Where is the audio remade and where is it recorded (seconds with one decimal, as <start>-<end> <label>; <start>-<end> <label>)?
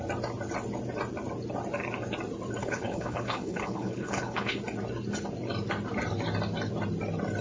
0.0-2.6 recorded; 2.6-4.6 remade; 4.6-7.4 recorded